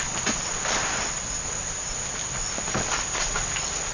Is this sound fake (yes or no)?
no